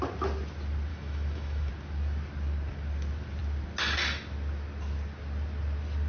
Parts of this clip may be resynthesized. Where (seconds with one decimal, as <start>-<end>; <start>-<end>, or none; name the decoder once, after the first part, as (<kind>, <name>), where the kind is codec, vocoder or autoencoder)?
0.9-1.7 (autoencoder, DAC-VAE)